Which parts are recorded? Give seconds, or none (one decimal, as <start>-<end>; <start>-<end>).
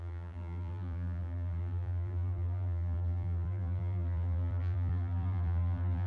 none